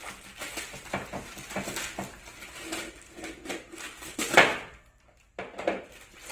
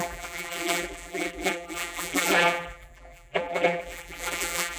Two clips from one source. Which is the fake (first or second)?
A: second